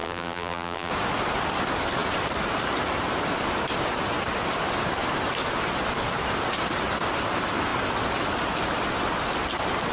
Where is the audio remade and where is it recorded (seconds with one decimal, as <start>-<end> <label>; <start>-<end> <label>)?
0.0-0.9 remade; 0.9-9.9 recorded